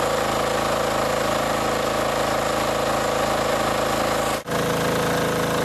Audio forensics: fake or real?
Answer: real